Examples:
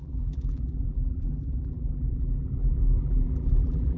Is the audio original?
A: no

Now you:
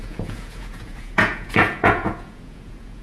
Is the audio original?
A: no